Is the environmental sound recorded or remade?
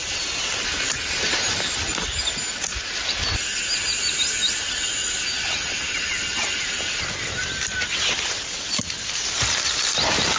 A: recorded